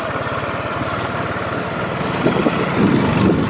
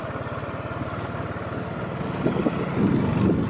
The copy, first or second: first